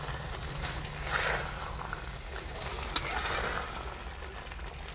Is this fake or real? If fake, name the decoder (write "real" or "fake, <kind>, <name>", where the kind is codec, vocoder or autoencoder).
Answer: real